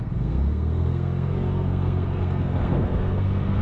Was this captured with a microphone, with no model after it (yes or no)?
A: no